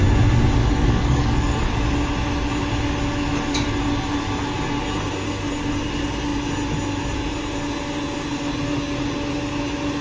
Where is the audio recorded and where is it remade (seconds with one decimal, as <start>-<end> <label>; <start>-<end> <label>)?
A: 0.0-0.6 recorded; 0.6-1.7 remade; 1.7-10.0 recorded